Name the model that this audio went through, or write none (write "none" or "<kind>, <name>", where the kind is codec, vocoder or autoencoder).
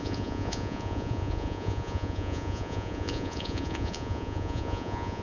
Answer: vocoder, Vocos